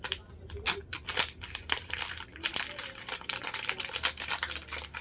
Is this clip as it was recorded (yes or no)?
no